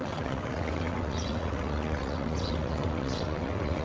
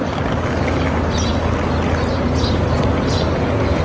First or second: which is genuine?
second